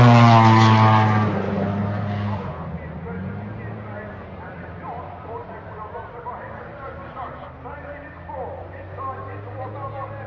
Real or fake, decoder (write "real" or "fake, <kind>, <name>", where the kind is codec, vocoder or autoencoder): real